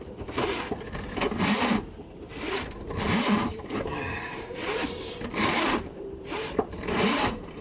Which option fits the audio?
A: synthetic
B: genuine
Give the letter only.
A